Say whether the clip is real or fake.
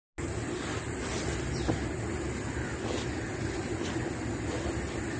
real